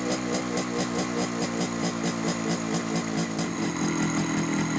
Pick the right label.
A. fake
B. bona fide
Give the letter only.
B